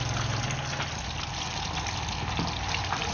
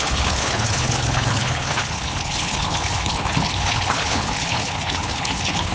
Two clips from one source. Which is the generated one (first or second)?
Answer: second